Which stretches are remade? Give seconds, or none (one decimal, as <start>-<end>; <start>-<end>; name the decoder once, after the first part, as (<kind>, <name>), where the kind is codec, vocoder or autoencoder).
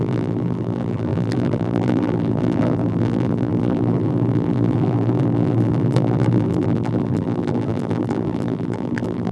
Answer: 0.0-9.3 (vocoder, BigVGAN v2)